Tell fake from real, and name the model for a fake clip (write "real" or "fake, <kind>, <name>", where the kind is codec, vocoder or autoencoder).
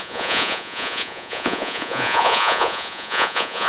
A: fake, vocoder, Vocos